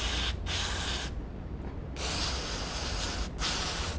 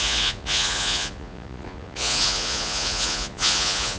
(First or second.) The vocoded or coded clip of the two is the second